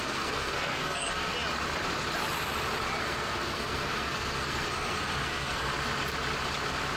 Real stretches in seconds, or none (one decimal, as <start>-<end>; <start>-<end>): 1.3-3.0; 5.7-7.0